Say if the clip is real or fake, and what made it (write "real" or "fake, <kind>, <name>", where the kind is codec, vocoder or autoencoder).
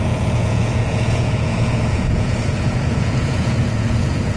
fake, vocoder, Vocos